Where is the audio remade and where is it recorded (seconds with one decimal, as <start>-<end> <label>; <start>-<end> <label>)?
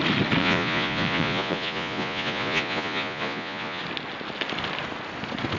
0.0-0.4 recorded; 0.4-3.8 remade; 3.8-5.6 recorded